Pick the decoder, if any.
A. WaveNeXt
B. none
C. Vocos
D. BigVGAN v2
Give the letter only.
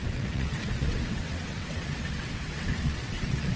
A